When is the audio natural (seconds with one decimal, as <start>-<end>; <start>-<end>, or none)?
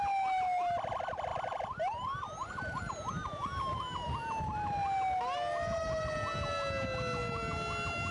0.0-1.3; 2.8-8.1